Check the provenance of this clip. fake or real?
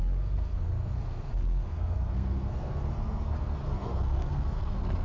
fake